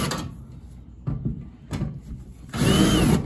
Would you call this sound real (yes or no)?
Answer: yes